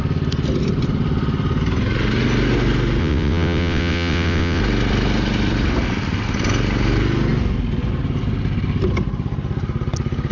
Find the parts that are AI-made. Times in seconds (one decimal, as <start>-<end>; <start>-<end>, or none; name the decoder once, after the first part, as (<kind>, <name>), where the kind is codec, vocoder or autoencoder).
3.0-4.6 (vocoder, WaveNeXt)

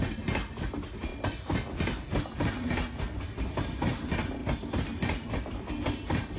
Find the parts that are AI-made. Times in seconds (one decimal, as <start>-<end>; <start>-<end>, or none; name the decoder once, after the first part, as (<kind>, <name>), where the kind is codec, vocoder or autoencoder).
none